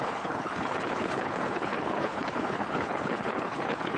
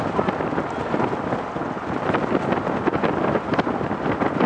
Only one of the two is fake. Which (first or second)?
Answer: first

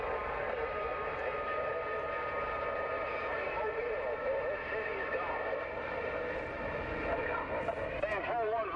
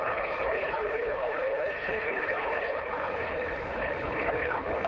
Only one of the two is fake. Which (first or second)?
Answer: second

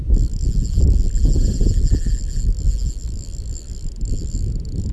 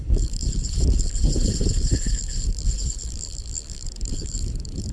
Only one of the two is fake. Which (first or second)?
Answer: second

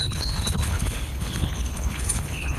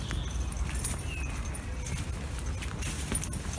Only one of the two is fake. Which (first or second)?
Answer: first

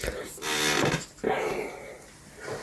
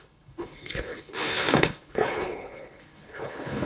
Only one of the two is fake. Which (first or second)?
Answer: second